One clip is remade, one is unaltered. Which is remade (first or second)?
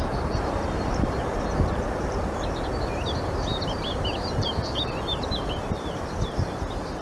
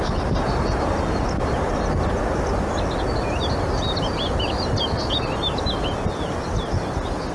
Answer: first